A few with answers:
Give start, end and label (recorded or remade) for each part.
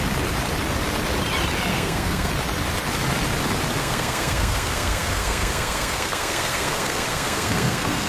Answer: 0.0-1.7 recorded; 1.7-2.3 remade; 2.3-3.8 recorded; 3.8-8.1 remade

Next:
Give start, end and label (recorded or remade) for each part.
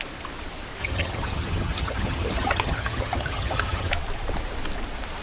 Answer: 0.0-0.8 recorded; 0.8-3.9 remade; 3.9-5.2 recorded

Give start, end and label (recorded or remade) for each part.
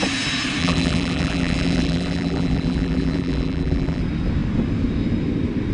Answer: 0.0-0.6 recorded; 0.6-4.0 remade; 4.0-5.7 recorded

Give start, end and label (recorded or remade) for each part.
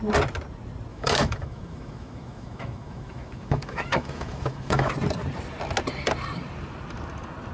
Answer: 0.0-0.9 recorded; 0.9-4.9 remade; 4.9-7.5 recorded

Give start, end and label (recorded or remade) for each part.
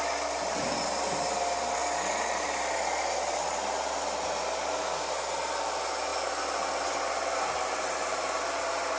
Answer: 0.0-9.0 recorded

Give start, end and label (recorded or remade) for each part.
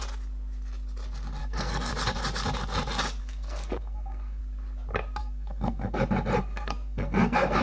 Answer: 0.0-1.4 recorded; 1.4-1.9 remade; 1.9-3.2 recorded; 3.2-4.4 remade; 4.4-5.2 recorded; 5.2-6.0 remade; 6.0-6.4 recorded; 6.4-7.6 remade